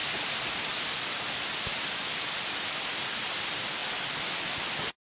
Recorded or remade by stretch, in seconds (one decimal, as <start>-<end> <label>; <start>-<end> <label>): 0.0-5.1 recorded